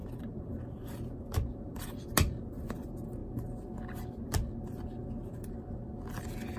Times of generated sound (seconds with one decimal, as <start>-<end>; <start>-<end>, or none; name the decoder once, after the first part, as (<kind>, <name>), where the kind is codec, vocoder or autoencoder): 0.0-0.6 (vocoder, BigVGAN v2); 1.5-2.1